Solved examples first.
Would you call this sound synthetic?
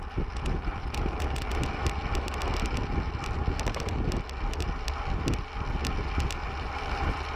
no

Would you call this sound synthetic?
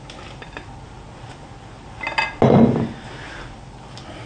no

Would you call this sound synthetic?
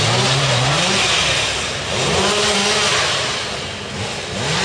no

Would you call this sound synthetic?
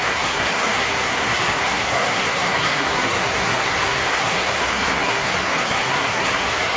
yes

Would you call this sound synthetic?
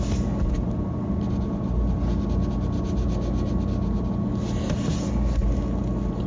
no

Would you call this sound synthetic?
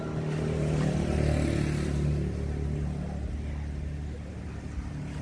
no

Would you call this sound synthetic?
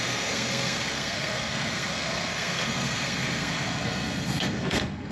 yes